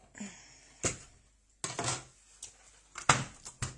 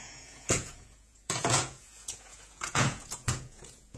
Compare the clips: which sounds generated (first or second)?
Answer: second